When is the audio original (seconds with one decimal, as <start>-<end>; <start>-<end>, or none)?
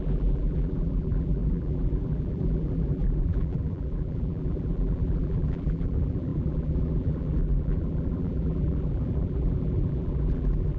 none